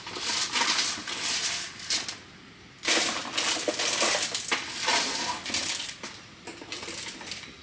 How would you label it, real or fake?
real